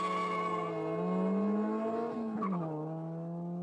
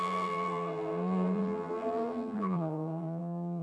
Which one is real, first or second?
first